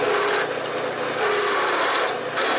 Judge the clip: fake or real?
real